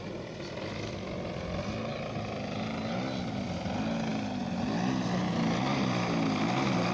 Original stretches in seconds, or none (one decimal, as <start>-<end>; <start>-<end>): 0.0-6.9